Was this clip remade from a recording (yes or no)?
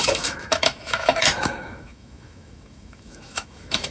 yes